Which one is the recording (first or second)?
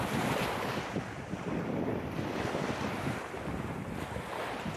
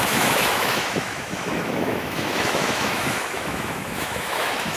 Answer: first